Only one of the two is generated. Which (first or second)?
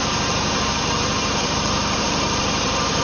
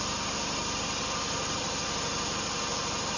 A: first